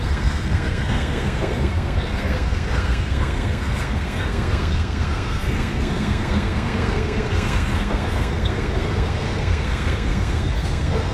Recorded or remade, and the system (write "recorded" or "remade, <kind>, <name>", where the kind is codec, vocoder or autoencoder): remade, codec, SNAC